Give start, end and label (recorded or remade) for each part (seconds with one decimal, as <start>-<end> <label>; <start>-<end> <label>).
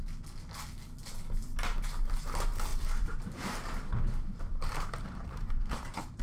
0.0-2.7 recorded; 2.7-6.2 remade